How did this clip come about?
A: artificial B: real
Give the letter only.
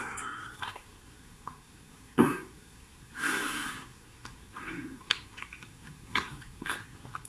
A